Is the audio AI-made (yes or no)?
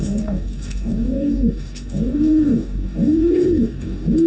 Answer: yes